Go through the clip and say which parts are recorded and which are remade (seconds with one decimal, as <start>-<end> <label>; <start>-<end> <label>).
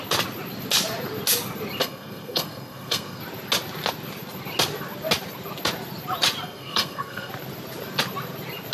0.0-1.8 recorded; 1.8-3.2 remade; 3.2-6.4 recorded; 6.4-7.3 remade; 7.3-8.7 recorded